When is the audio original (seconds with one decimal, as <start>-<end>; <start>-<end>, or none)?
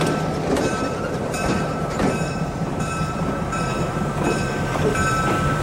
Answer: 0.0-0.7; 4.1-5.6